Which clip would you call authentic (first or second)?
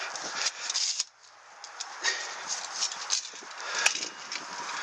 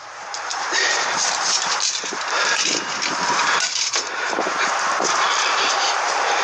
first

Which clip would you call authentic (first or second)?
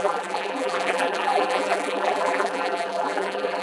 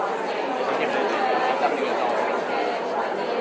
second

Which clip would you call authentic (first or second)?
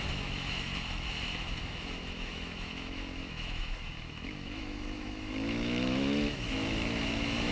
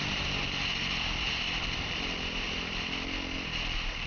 second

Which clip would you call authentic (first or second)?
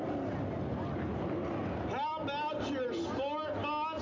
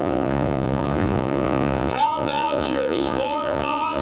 first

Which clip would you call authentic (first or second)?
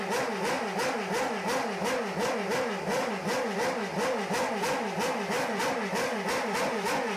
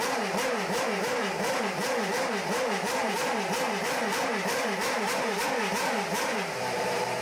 first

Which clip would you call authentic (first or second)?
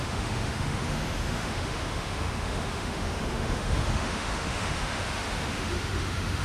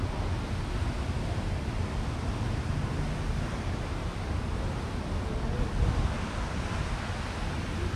second